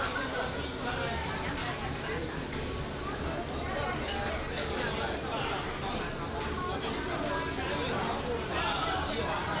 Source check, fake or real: real